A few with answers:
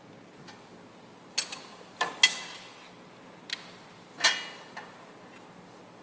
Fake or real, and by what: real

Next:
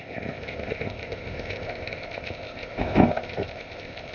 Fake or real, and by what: fake, codec, ZipCodec